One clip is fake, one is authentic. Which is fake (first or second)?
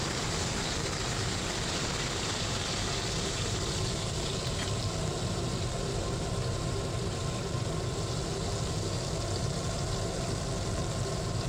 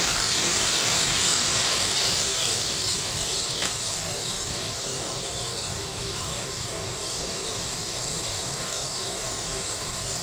second